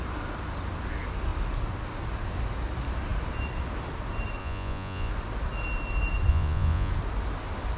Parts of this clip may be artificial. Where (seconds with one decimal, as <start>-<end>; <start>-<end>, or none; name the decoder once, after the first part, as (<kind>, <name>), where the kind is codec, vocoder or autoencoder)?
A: 4.4-5.1 (vocoder, Vocos); 6.3-6.9